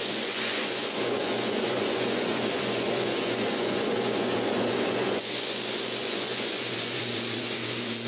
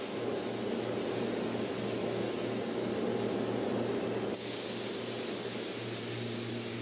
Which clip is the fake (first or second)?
first